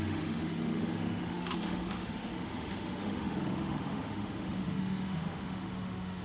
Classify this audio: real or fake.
fake